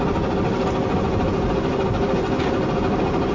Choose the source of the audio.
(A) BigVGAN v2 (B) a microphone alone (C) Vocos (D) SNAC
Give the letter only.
B